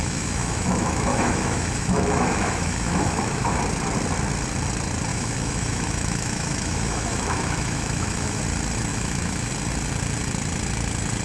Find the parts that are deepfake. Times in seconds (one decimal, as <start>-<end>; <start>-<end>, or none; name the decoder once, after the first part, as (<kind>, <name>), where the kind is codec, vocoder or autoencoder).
0.0-3.6 (autoencoder, DAC-VAE); 5.1-8.4; 8.9-9.5